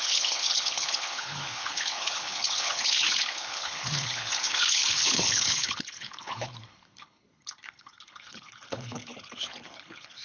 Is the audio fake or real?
fake